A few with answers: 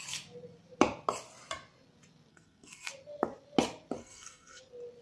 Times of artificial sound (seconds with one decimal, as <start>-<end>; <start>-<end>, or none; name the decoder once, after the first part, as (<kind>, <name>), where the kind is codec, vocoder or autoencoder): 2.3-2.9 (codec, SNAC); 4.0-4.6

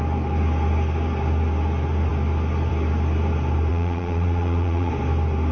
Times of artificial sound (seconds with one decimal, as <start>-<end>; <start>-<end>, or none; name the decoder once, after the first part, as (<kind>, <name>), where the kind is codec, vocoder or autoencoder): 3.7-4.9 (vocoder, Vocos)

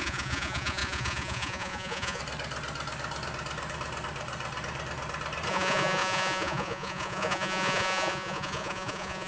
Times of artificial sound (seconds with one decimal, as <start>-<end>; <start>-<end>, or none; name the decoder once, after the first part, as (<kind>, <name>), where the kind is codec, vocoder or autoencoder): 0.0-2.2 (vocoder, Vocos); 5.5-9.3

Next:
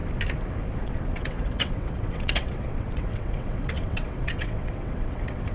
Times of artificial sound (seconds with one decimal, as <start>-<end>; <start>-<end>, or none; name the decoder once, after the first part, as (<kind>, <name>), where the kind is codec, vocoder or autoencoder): 0.8-5.5 (vocoder, WaveNeXt)

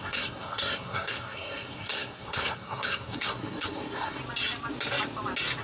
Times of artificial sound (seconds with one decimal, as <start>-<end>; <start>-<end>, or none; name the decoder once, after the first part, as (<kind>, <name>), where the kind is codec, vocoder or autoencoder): 0.0-4.2 (codec, SNAC)

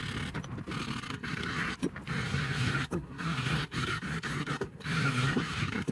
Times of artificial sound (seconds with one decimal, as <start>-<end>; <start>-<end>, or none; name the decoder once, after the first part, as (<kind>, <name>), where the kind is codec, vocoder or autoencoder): 1.1-1.7 (codec, SNAC); 2.3-5.9